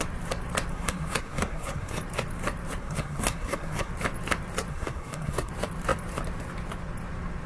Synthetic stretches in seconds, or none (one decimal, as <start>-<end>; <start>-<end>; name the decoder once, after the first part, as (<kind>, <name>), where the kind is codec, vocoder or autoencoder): 0.7-2.0 (codec, SNAC); 2.8-3.9; 4.7-5.5